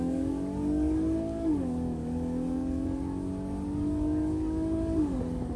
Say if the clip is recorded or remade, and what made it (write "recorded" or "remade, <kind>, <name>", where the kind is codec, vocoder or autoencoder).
remade, codec, DAC